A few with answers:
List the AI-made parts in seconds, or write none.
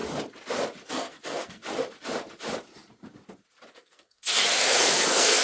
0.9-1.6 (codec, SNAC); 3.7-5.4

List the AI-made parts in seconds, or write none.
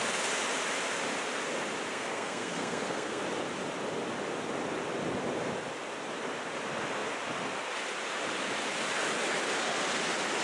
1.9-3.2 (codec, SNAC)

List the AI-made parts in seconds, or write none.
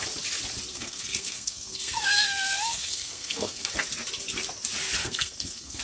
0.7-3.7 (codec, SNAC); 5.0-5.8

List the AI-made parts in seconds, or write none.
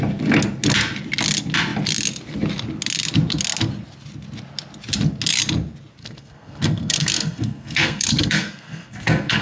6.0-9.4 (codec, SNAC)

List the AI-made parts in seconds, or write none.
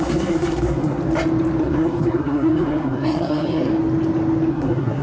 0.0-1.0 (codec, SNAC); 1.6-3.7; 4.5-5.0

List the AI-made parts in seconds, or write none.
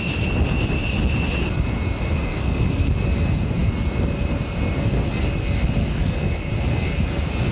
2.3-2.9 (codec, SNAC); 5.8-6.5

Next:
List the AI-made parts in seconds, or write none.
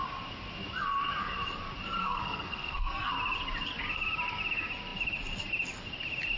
2.0-3.1 (codec, SNAC)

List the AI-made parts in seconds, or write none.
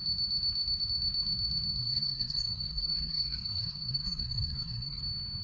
1.8-5.0 (codec, SNAC)